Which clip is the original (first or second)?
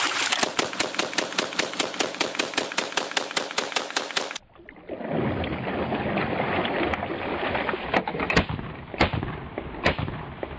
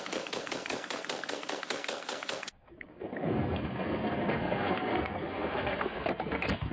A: first